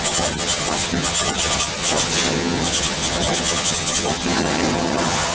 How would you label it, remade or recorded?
remade